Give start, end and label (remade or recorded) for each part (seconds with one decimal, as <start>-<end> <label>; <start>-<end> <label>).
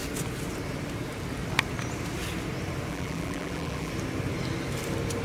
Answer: 0.0-2.9 recorded; 2.9-3.9 remade; 3.9-5.2 recorded